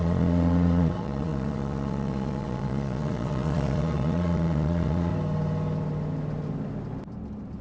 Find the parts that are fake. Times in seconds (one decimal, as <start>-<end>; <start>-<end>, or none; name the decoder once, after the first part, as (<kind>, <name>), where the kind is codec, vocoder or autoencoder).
0.0-5.1 (vocoder, Vocos)